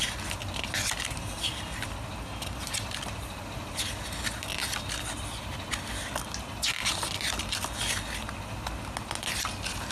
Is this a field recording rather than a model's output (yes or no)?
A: yes